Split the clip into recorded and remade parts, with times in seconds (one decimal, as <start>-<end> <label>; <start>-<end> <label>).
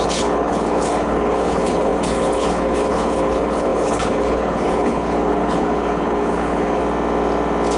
0.0-6.8 remade; 6.8-7.8 recorded